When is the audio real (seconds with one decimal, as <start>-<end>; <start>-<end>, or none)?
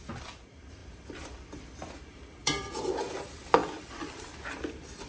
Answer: 0.0-0.8; 1.9-2.4; 2.9-3.6; 4.4-5.1